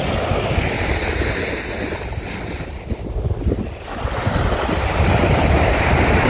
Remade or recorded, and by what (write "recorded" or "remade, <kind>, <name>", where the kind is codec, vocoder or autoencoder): recorded